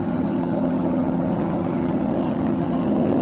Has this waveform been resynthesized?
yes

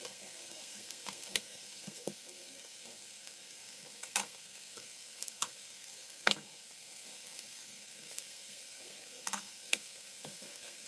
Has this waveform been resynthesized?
yes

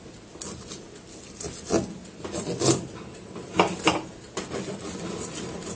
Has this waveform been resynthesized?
no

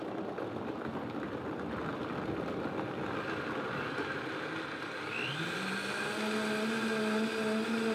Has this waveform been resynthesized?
no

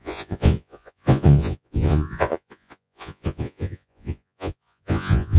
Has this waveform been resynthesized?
yes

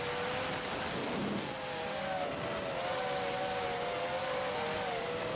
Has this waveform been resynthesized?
no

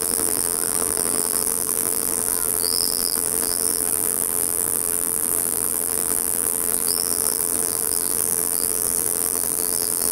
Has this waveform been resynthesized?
yes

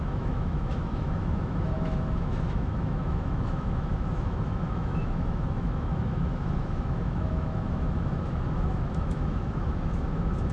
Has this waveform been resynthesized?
yes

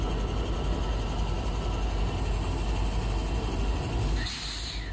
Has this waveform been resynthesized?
no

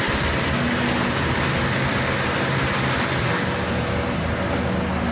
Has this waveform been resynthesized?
no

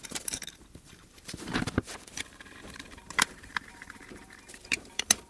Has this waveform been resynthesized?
yes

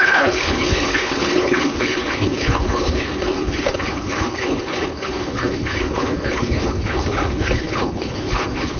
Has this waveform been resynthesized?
yes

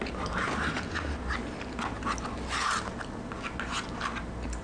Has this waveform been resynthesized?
no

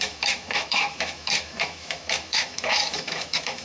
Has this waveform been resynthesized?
yes